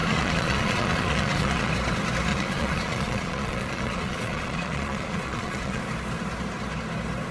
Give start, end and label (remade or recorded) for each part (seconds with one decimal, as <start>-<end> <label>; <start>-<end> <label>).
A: 0.0-1.7 remade; 1.7-2.3 recorded; 2.3-5.8 remade; 5.8-7.3 recorded